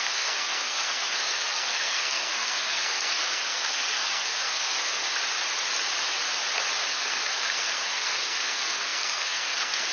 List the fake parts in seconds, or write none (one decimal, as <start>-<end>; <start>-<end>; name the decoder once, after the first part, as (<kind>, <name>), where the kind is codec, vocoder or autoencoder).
0.0-5.1 (codec, SNAC); 6.9-9.9